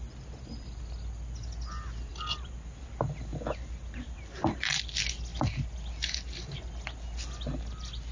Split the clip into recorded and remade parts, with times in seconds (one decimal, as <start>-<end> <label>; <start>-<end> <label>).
0.0-8.1 recorded